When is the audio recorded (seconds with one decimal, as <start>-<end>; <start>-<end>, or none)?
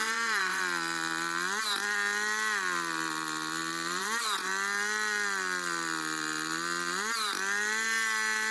0.6-4.0; 4.5-8.5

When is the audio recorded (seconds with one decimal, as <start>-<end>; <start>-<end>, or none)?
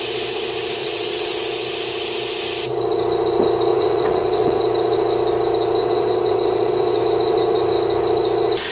0.0-0.8; 1.4-3.7; 4.6-5.8; 7.0-8.7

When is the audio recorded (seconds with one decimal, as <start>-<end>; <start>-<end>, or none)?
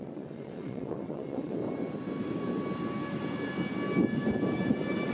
1.6-5.1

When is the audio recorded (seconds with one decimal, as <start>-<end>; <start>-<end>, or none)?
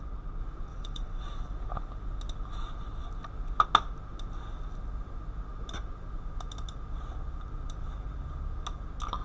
0.0-0.7; 1.4-9.2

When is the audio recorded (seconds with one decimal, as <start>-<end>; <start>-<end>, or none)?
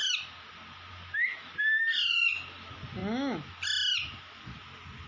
0.0-5.1